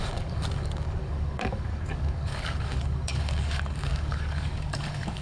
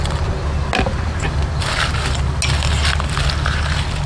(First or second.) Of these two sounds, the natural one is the second